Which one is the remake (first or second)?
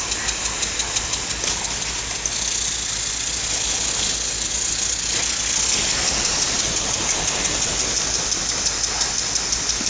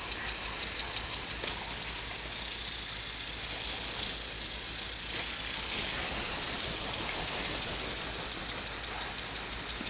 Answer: second